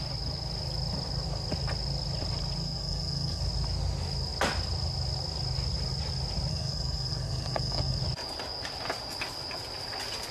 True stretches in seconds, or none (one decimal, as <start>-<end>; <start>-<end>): 0.0-2.6; 3.4-6.5; 8.0-10.3